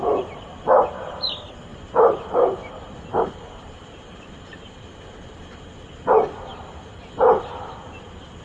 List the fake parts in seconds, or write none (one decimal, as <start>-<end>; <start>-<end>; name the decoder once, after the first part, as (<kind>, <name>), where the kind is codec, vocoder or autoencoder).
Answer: 1.7-5.7 (vocoder, BigVGAN v2); 6.5-7.7